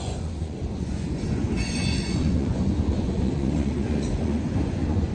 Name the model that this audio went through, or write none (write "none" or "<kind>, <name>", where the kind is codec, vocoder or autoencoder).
vocoder, Vocos